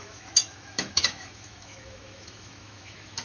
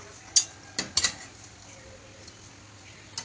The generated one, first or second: first